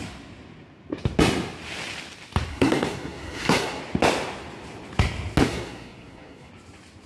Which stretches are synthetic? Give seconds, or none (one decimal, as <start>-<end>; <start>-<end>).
2.5-3.8; 5.5-6.5